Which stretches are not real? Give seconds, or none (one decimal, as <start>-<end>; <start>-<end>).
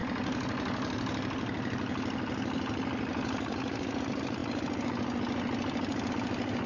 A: 4.0-4.4; 6.1-6.7